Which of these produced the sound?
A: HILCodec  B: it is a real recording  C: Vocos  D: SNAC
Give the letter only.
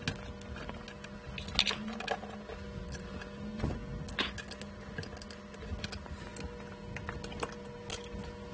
B